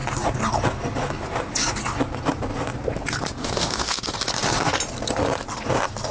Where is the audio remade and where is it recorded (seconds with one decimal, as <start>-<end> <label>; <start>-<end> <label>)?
0.0-3.4 recorded; 3.4-4.0 remade; 4.0-6.1 recorded